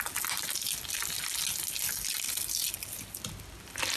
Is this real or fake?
real